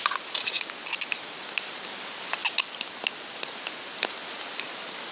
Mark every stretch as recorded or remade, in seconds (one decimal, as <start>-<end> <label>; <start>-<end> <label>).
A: 0.0-5.1 recorded